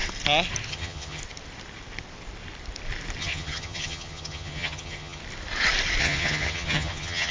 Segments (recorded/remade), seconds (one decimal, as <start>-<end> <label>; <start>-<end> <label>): 0.0-0.7 recorded; 0.7-1.2 remade; 1.2-3.2 recorded; 3.2-5.2 remade; 5.2-6.0 recorded; 6.0-7.3 remade